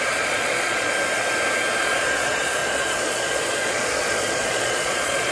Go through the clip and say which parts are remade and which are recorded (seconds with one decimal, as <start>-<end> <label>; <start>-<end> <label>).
0.0-0.9 remade; 0.9-1.8 recorded; 1.8-5.3 remade